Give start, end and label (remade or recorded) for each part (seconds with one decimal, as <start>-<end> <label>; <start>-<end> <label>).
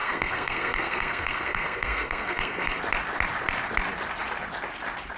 0.0-2.8 remade; 2.8-5.2 recorded